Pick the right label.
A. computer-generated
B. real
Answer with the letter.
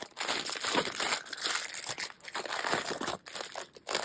B